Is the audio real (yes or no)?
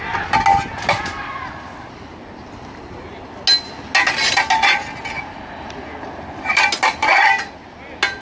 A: yes